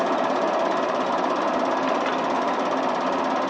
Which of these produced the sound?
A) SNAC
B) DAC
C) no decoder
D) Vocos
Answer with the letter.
C